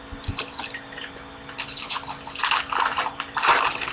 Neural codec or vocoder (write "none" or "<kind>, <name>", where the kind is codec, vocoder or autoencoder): none